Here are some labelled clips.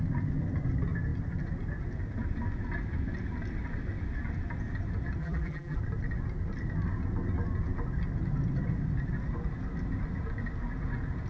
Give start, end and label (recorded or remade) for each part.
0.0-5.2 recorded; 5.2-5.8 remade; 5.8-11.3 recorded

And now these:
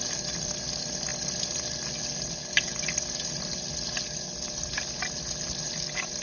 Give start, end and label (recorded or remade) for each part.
0.0-6.2 recorded